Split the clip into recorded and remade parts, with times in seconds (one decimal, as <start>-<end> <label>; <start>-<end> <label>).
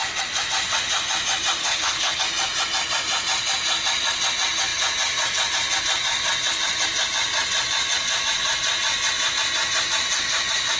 0.0-1.6 recorded; 1.6-2.2 remade; 2.2-10.8 recorded